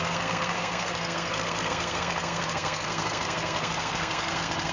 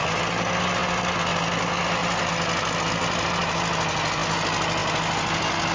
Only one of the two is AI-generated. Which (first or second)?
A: first